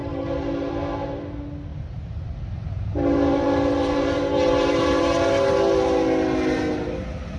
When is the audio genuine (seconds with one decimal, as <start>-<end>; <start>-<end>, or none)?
0.7-1.7; 5.0-7.4